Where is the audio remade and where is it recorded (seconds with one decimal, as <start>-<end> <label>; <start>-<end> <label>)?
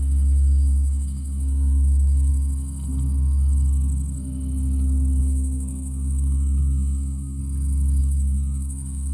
0.0-2.3 remade; 2.3-5.2 recorded; 5.2-7.4 remade; 7.4-8.0 recorded; 8.0-9.1 remade